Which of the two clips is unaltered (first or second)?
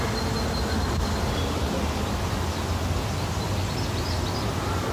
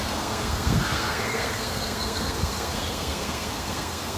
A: first